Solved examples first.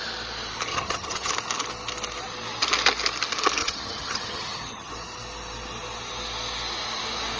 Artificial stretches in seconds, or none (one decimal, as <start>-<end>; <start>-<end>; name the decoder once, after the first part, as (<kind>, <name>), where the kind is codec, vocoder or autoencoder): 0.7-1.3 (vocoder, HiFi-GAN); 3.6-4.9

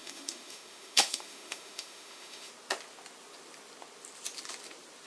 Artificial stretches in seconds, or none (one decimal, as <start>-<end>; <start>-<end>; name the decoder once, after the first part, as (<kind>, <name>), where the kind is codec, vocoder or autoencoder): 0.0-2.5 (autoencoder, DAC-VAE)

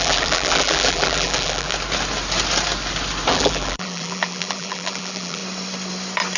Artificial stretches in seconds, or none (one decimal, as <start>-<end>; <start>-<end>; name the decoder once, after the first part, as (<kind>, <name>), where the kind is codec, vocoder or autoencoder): 0.0-1.7 (vocoder, BigVGAN v2); 3.3-5.4

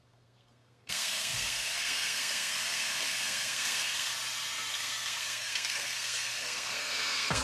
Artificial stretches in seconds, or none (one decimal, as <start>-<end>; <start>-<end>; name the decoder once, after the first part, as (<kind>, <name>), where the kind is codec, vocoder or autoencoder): 0.0-4.1 (codec, SNAC); 4.7-7.4